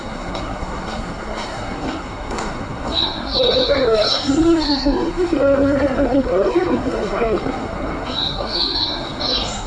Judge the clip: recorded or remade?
remade